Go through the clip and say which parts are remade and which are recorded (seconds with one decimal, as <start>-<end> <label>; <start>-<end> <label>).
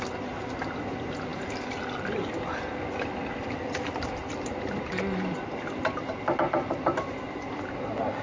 0.0-8.2 recorded